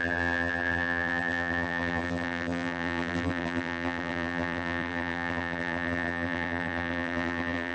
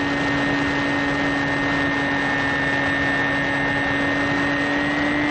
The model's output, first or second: first